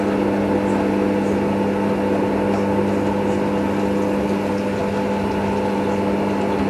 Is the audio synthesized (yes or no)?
no